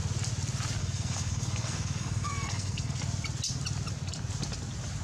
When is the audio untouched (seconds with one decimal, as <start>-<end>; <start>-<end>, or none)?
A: 0.0-0.8; 3.0-5.0